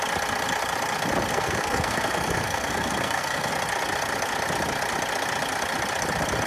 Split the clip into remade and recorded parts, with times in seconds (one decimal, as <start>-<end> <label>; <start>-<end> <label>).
0.0-1.3 recorded; 1.3-3.5 remade; 3.5-6.5 recorded